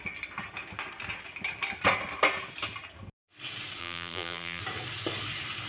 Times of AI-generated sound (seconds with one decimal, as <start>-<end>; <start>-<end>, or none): 3.8-4.6